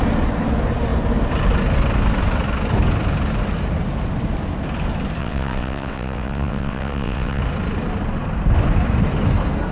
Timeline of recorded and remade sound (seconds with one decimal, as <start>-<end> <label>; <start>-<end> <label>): 0.0-5.2 recorded; 5.2-7.4 remade; 7.4-9.7 recorded